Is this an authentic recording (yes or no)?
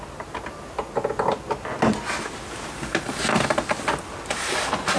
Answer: yes